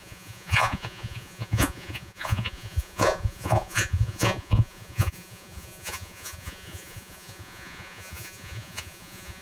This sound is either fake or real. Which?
fake